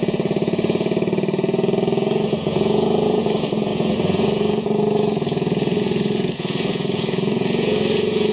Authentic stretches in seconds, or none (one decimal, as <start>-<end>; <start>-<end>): none